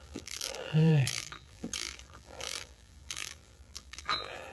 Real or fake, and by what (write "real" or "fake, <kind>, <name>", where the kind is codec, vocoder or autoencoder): fake, vocoder, BigVGAN v2